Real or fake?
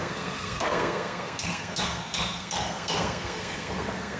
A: fake